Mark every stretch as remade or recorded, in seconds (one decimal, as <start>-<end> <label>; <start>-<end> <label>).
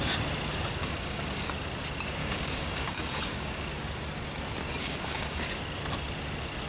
0.0-0.8 recorded; 0.8-1.5 remade; 1.5-2.2 recorded; 2.2-3.7 remade; 3.7-4.8 recorded; 4.8-5.5 remade; 5.5-6.7 recorded